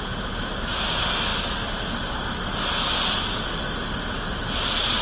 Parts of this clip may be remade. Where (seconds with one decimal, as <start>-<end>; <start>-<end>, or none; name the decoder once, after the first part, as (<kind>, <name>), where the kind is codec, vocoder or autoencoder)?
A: none